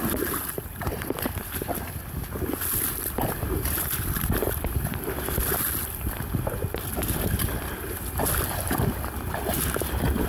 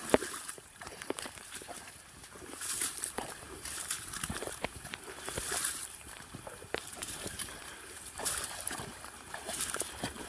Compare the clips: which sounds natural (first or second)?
first